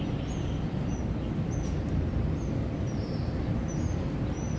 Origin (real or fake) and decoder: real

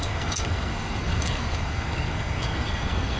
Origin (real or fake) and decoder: fake, codec, SNAC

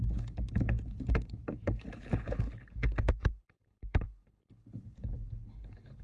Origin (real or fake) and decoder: fake, codec, HILCodec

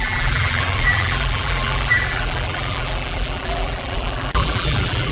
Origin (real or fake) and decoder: fake, vocoder, BigVGAN v2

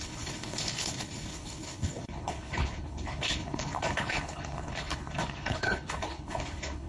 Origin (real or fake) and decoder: fake, codec, HILCodec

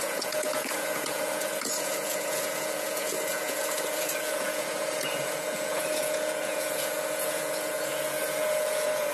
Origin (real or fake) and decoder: fake, vocoder, Vocos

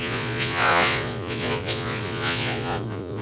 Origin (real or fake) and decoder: fake, vocoder, Vocos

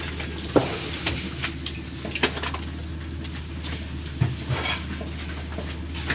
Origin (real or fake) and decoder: real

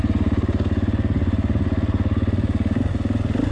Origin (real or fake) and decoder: real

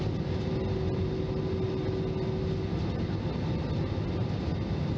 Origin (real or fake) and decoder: real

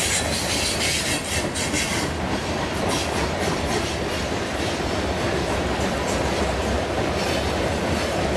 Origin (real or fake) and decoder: real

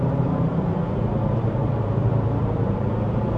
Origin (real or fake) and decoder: fake, vocoder, BigVGAN v2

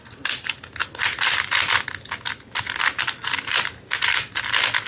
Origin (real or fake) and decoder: real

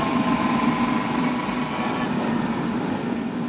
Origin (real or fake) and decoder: real